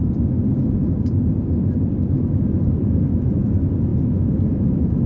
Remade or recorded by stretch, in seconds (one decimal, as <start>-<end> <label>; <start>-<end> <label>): 0.0-5.1 recorded